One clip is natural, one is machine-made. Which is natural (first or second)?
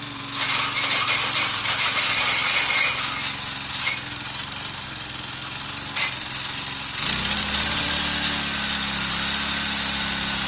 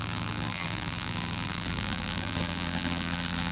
first